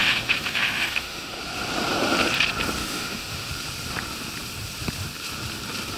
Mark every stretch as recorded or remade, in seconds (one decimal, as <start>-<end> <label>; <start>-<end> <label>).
0.0-1.4 remade; 1.4-2.8 recorded; 2.8-3.5 remade; 3.5-6.0 recorded